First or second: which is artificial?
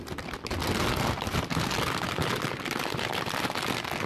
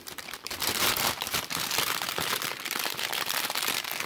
second